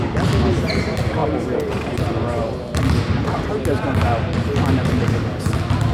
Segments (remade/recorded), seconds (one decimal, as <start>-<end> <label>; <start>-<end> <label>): 0.0-5.9 recorded